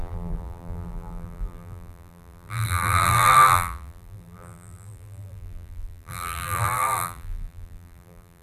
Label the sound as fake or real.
fake